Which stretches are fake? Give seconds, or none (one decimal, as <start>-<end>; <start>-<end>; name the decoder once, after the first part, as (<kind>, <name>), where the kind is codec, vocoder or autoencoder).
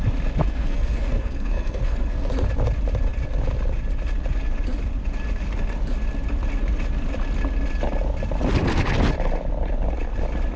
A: 0.4-2.3 (codec, SNAC)